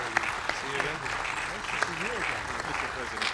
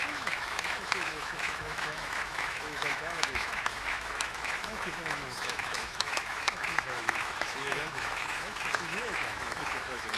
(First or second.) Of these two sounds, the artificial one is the second